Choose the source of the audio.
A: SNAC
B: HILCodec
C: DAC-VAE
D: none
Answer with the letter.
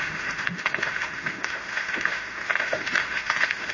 C